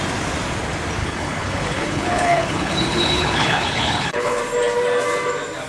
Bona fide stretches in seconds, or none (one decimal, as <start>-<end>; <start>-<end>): 0.0-1.0; 4.4-5.7